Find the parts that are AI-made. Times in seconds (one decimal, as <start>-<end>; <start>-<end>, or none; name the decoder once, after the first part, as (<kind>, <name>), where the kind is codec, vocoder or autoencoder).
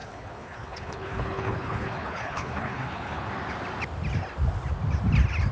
0.0-3.3 (codec, HILCodec)